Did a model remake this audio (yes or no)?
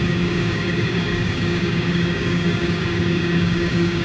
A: yes